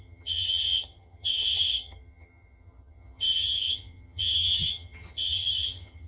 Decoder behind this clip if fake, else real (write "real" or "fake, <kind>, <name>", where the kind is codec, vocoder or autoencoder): fake, vocoder, HiFi-GAN